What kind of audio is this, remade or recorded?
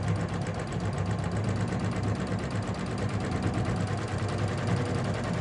recorded